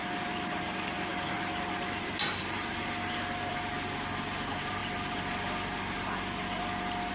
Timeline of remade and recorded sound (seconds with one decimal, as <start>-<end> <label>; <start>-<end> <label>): 0.0-7.1 recorded